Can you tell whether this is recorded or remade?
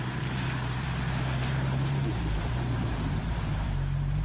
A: remade